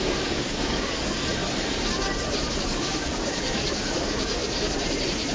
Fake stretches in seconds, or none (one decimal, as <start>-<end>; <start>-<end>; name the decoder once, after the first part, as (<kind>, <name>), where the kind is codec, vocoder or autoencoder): 0.0-1.2 (codec, DAC); 2.5-4.4